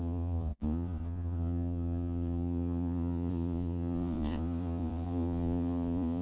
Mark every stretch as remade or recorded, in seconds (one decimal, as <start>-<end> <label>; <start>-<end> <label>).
0.0-6.2 remade